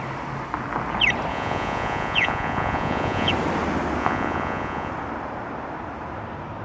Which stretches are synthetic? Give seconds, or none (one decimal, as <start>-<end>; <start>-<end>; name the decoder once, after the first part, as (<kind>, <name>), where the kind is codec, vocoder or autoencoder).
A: 1.3-3.3 (vocoder, Vocos); 4.0-4.9